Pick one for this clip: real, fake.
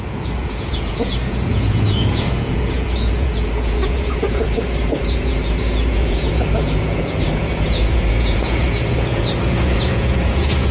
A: fake